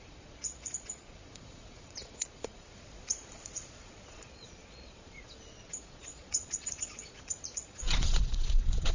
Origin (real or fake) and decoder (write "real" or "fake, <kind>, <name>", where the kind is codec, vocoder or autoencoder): fake, vocoder, Vocos